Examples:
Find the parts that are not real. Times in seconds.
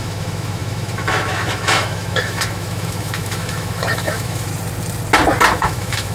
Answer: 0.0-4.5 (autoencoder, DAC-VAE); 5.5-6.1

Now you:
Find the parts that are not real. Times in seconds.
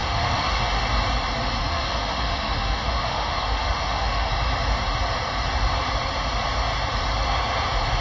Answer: 0.0-0.8 (autoencoder, DAC-VAE); 1.6-4.3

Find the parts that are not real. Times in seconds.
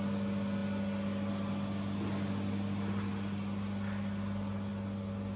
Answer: none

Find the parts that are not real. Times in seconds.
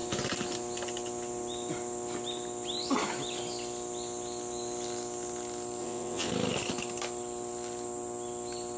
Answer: 5.8-6.3 (vocoder, WaveNeXt)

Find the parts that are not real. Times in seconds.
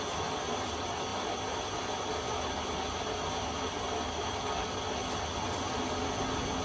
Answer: none